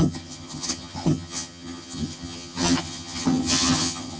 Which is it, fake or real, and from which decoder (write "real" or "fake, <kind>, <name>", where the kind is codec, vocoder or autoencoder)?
fake, vocoder, HiFi-GAN